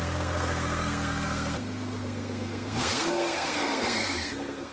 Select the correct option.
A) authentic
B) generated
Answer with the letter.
B